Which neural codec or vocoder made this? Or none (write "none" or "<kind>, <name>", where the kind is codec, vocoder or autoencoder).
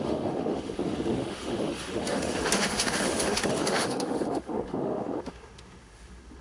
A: autoencoder, DAC-VAE